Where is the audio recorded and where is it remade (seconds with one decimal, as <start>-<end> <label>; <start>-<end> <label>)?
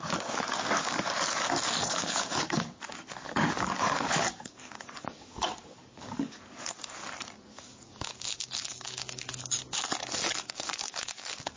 0.0-7.0 remade; 7.0-7.5 recorded; 7.5-9.6 remade; 9.6-10.3 recorded; 10.3-11.6 remade